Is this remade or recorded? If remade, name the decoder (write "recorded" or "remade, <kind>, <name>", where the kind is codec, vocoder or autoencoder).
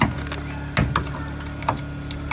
recorded